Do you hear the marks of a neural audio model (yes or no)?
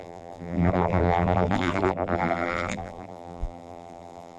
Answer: yes